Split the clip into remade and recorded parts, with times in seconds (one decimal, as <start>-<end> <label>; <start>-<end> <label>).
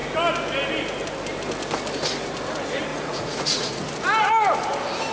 0.0-2.9 recorded; 2.9-3.8 remade; 3.8-5.1 recorded